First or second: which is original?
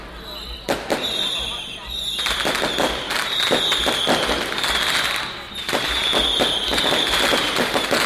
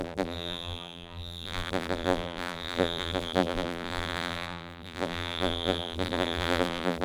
first